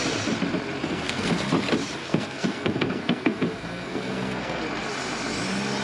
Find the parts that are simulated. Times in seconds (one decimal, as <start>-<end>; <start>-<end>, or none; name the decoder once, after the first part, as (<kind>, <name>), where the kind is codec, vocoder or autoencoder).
0.8-1.5 (codec, SNAC); 2.0-4.6

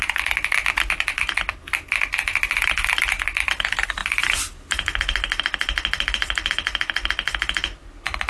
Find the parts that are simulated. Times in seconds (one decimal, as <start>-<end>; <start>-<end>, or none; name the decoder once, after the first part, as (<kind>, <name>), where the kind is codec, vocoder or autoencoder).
none

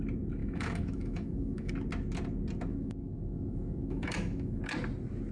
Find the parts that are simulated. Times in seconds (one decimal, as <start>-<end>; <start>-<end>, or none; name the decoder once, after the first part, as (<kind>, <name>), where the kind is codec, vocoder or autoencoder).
0.4-1.7 (autoencoder, DAC-VAE); 2.7-4.6